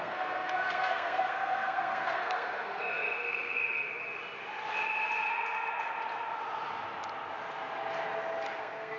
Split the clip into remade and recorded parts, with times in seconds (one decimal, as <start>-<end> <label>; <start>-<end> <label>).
0.0-3.9 remade; 3.9-8.6 recorded; 8.6-9.0 remade